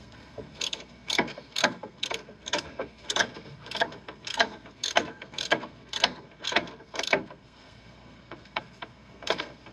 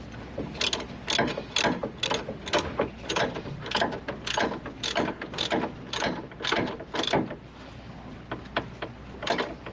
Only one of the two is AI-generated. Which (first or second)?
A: first